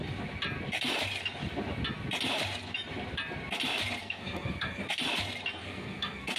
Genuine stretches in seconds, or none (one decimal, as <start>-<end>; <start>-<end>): 0.0-4.0; 4.8-5.6